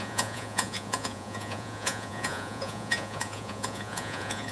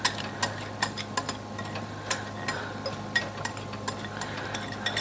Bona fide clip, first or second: second